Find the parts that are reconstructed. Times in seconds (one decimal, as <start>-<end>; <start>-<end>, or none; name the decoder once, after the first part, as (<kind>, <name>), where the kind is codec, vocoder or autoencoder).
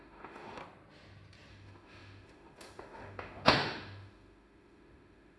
0.0-0.6 (autoencoder, DAC-VAE); 1.5-5.4